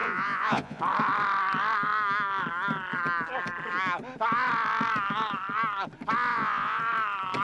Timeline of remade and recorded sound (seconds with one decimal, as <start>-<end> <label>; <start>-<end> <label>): 0.0-0.8 remade; 0.8-6.3 recorded; 6.3-6.8 remade; 6.8-7.4 recorded